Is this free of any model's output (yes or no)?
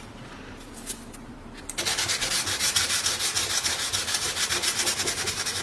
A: yes